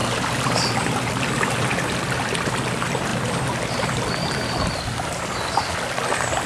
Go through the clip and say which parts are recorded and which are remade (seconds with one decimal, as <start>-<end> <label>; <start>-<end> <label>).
0.0-6.5 recorded